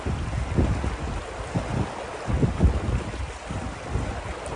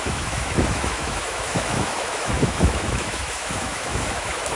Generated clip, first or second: second